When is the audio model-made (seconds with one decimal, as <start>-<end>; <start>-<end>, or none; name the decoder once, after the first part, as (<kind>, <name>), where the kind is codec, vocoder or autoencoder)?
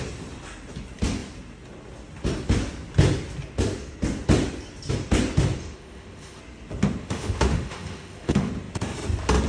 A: 5.6-6.4 (autoencoder, DAC-VAE); 7.0-8.5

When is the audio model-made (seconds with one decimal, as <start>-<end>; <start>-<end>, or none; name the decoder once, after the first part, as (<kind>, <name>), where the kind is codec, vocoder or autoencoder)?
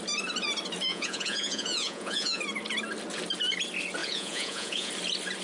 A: 0.9-2.4 (vocoder, Vocos); 4.0-4.9